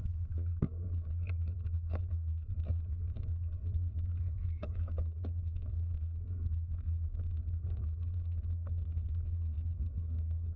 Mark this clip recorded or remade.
remade